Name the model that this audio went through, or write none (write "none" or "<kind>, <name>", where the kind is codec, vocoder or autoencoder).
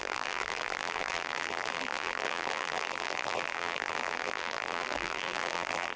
vocoder, BigVGAN v2